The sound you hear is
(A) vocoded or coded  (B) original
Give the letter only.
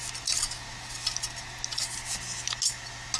B